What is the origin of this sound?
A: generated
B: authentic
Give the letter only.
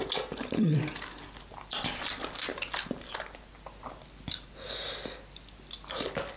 B